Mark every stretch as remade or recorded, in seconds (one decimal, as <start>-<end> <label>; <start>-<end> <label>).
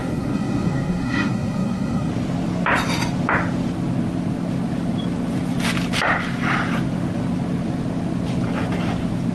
0.0-2.1 remade; 2.1-9.3 recorded